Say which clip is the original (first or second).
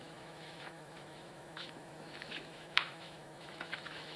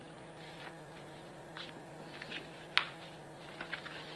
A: second